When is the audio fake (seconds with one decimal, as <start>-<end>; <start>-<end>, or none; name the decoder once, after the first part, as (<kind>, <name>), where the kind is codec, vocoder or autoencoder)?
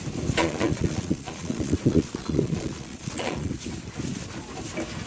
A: 0.4-3.5 (vocoder, Vocos)